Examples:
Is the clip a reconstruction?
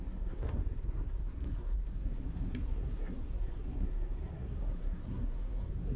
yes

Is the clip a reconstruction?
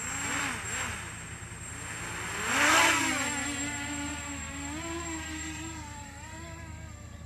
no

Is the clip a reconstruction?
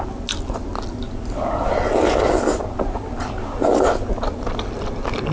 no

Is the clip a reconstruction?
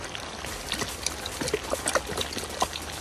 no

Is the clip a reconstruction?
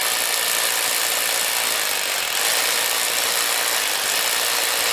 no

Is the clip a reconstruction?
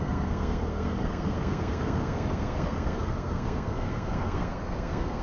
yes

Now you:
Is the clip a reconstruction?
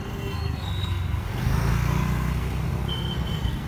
yes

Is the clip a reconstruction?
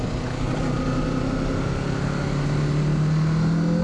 no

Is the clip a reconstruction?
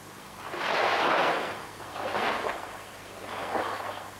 yes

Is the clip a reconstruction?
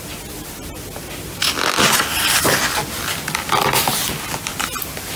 no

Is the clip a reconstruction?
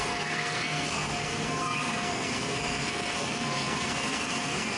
yes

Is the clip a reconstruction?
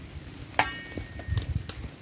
no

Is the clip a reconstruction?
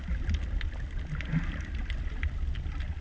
no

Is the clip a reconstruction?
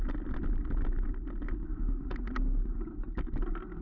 no